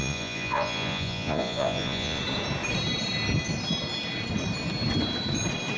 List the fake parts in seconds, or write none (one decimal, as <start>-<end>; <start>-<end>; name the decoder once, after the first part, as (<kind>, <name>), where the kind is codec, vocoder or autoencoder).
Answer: 0.0-2.2 (vocoder, Vocos)